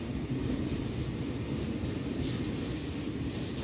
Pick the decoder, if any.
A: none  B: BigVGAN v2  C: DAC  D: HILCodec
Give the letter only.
A